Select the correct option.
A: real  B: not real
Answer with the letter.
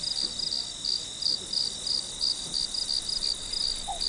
A